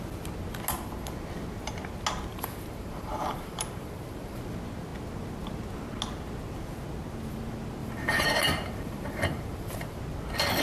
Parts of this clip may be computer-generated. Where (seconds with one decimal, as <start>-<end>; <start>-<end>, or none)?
2.3-4.4; 7.8-10.0